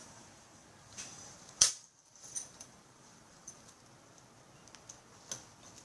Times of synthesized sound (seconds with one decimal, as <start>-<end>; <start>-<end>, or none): 0.0-3.5